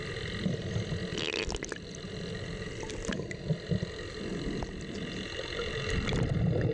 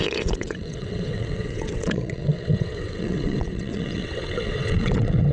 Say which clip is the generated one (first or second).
second